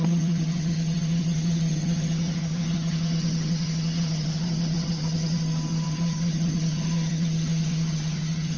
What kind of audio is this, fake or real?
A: fake